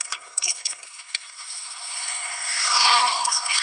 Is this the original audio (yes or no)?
no